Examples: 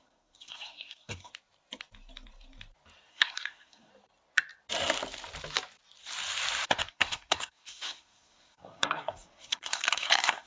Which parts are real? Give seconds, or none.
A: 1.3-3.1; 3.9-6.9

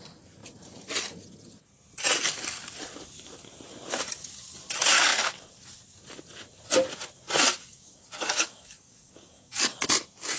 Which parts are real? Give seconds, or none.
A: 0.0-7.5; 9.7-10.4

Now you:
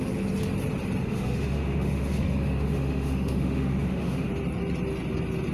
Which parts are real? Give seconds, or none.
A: 0.0-1.0; 4.3-5.5

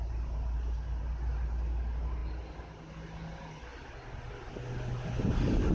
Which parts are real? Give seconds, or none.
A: 0.0-5.7

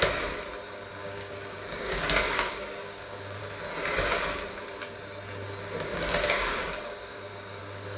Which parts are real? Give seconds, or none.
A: 0.0-1.0; 3.4-5.9; 7.6-8.0

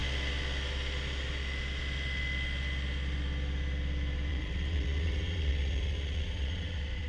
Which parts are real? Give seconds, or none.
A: 0.0-4.3

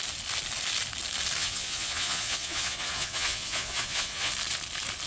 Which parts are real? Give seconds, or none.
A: 0.0-1.4; 4.3-5.1

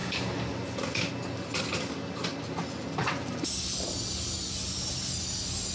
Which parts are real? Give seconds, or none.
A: 0.0-5.7